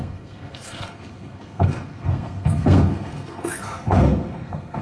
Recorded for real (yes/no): no